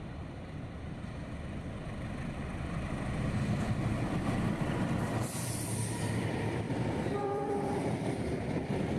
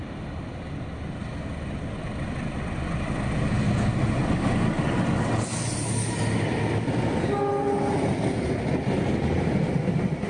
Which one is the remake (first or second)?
first